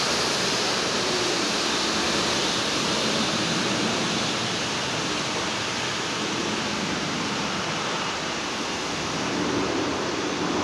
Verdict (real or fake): fake